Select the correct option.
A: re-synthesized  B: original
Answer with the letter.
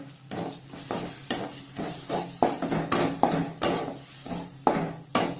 B